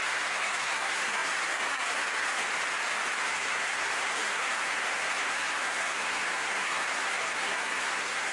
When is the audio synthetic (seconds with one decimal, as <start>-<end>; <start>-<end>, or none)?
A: 0.0-2.4; 3.2-8.3